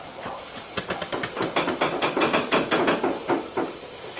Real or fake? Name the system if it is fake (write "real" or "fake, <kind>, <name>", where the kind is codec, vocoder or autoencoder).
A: real